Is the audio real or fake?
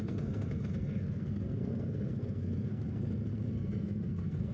fake